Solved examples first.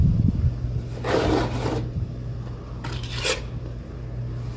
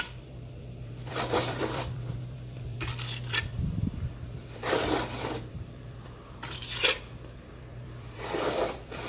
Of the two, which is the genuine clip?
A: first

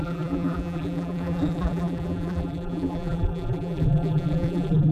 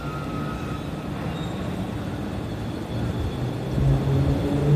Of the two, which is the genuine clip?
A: second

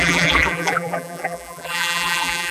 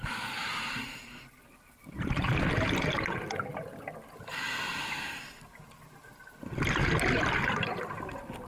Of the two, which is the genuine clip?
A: second